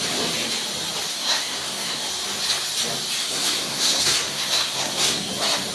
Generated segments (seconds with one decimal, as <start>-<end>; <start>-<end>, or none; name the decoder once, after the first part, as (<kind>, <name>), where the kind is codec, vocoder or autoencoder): 1.1-2.1 (codec, SNAC); 3.2-5.3